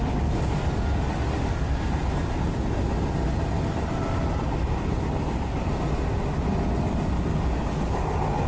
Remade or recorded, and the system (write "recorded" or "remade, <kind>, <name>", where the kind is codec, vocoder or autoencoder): recorded